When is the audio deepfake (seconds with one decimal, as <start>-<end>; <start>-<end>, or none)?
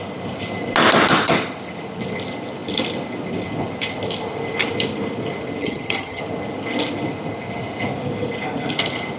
5.6-6.2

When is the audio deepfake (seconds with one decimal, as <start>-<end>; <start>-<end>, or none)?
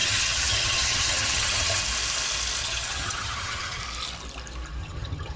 0.0-1.8; 2.6-3.8; 4.8-5.4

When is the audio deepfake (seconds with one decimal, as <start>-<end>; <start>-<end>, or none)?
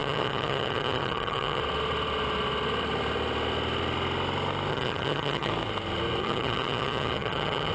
0.0-1.6; 4.7-5.5; 6.2-7.7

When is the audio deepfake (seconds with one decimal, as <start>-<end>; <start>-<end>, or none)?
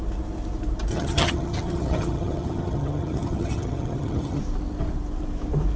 0.9-4.4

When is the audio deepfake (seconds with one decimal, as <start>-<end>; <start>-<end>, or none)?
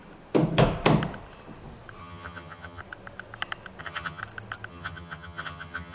2.0-2.8; 3.8-4.2; 4.7-5.9